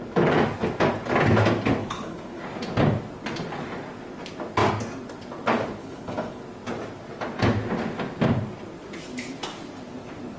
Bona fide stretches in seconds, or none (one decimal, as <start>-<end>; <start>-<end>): 0.0-1.8; 2.4-5.8; 6.4-10.4